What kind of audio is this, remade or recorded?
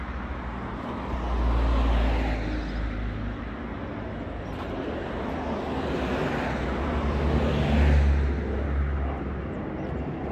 recorded